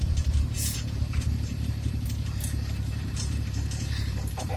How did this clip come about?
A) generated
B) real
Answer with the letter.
A